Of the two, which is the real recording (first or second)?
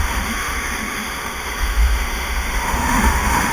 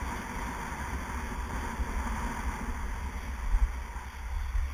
second